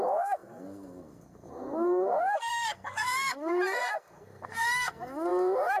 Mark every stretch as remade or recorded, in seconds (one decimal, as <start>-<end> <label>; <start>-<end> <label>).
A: 0.0-5.8 remade